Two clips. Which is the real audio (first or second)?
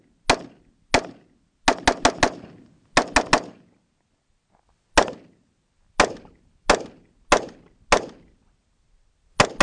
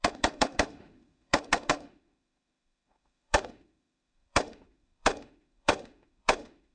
first